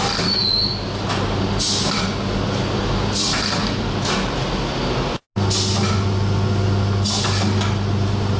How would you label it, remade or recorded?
recorded